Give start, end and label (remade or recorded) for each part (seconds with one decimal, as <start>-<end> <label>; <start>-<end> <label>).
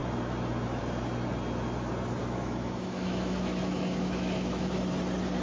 0.0-2.2 recorded; 2.2-4.9 remade; 4.9-5.4 recorded